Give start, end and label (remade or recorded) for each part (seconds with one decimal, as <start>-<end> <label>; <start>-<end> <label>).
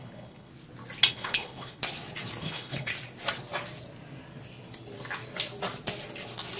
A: 0.0-0.5 remade; 0.5-1.1 recorded; 1.1-1.8 remade; 1.8-2.4 recorded; 2.4-2.9 remade; 2.9-6.6 recorded